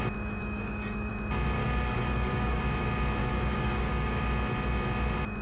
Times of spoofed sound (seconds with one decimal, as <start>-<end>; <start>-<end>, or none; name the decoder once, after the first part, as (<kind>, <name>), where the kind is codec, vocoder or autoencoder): 0.4-1.1 (codec, DAC); 1.6-2.6; 3.2-4.2